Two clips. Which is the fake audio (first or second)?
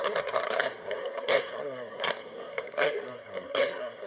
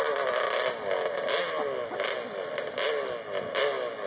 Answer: first